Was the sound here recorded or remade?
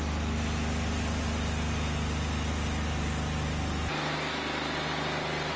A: recorded